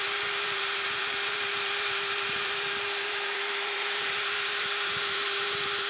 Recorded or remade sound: remade